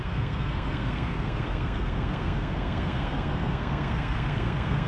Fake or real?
fake